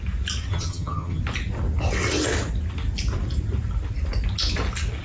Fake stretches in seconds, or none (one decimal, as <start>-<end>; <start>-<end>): 0.5-1.2